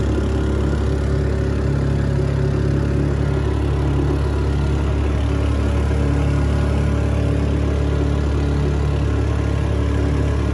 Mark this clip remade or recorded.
recorded